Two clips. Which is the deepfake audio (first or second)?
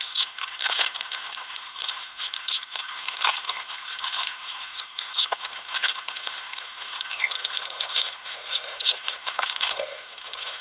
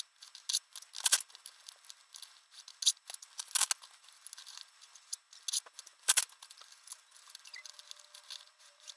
first